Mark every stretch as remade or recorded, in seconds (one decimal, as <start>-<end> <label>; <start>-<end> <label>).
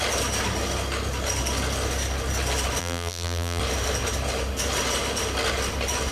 0.0-2.8 recorded; 2.8-3.6 remade; 3.6-6.1 recorded